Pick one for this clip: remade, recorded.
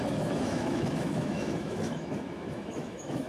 remade